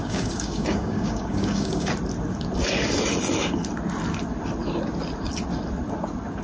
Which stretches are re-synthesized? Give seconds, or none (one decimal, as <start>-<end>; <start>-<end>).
0.0-1.9